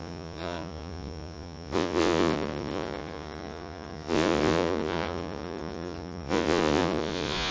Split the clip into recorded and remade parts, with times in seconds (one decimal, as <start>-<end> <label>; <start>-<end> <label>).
0.0-7.5 remade